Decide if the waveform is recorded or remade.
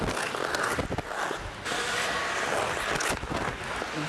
recorded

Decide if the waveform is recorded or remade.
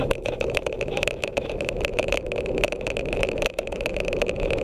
remade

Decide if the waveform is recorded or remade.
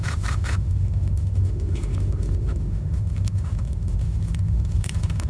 remade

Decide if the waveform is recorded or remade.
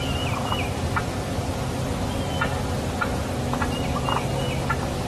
recorded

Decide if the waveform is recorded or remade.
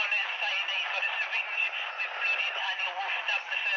recorded